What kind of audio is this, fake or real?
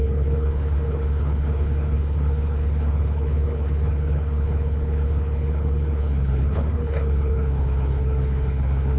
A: fake